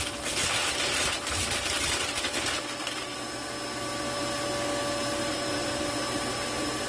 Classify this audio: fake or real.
real